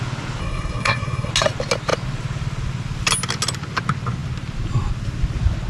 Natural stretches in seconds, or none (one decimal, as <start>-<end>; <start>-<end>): 0.0-0.4; 1.3-5.7